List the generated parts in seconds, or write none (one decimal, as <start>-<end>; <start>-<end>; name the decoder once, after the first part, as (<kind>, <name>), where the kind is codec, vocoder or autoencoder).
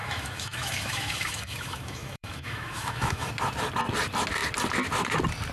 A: 0.0-3.3 (autoencoder, DAC-VAE)